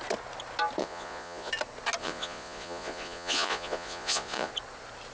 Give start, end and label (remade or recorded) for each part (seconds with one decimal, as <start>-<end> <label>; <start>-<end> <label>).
0.0-0.8 recorded; 0.8-1.5 remade; 1.5-2.0 recorded; 2.0-4.5 remade; 4.5-5.1 recorded